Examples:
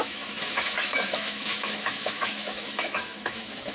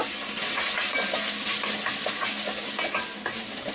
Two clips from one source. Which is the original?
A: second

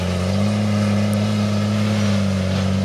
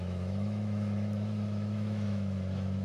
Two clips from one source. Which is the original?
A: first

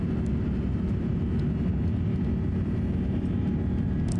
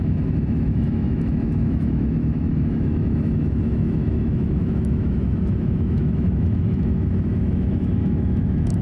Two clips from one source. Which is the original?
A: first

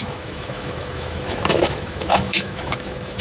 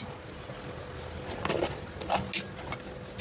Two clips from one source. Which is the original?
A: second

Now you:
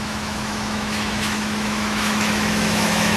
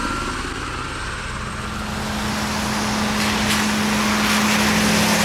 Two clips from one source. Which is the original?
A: second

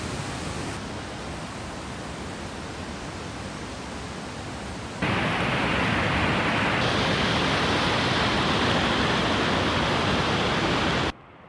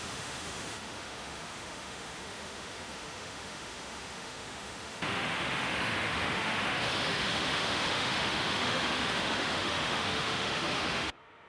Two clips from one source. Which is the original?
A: first